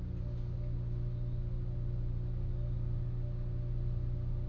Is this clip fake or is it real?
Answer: real